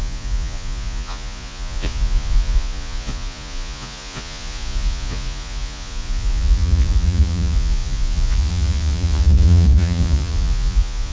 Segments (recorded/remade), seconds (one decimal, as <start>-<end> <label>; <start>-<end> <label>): 0.0-11.1 remade